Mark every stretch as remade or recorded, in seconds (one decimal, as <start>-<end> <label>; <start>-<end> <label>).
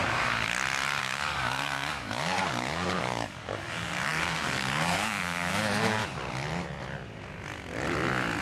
0.0-1.0 recorded; 1.0-6.0 remade; 6.0-8.4 recorded